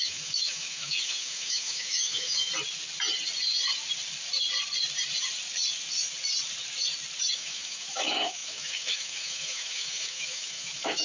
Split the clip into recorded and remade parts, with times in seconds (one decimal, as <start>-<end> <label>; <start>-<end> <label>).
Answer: 0.0-2.5 remade; 2.5-7.3 recorded; 7.3-11.0 remade